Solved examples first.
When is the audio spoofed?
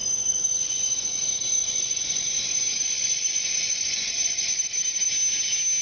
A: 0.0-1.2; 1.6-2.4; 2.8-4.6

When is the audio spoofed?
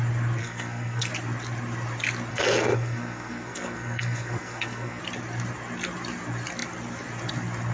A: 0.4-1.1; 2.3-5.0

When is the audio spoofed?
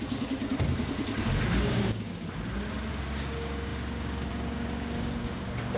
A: 0.0-0.4; 1.4-2.1; 2.9-5.8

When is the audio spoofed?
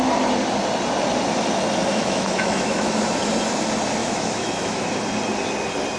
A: 1.9-3.0; 4.0-4.9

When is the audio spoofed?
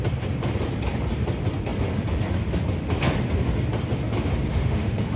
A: 4.5-5.2